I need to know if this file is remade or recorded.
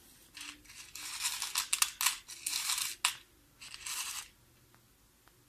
recorded